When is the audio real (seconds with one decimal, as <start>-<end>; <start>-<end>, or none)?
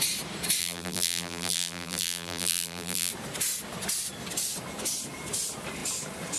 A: 0.0-0.6; 3.1-6.4